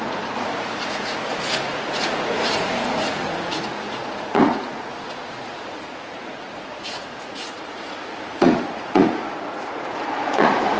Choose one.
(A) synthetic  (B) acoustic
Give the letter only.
A